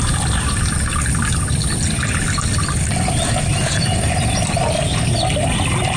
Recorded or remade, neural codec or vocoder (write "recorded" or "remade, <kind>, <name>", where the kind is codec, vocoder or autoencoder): recorded